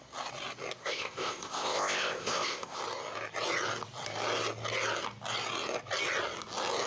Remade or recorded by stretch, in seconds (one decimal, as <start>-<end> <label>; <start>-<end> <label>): 0.0-0.8 recorded; 0.8-2.8 remade; 2.8-6.9 recorded